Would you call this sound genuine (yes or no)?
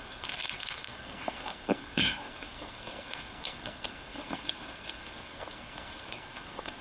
no